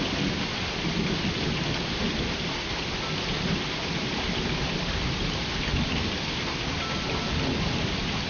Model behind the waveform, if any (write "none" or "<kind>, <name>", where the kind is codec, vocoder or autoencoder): none